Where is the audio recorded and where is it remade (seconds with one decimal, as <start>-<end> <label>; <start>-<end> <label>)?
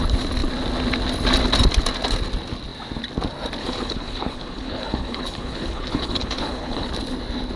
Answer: 0.0-3.6 recorded; 3.6-6.9 remade; 6.9-7.6 recorded